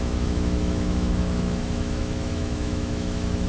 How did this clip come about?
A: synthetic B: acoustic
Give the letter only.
A